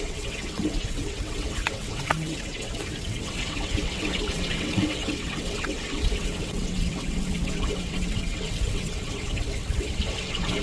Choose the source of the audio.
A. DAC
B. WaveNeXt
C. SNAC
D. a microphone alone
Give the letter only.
B